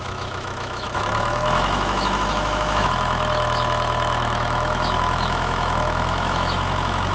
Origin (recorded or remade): remade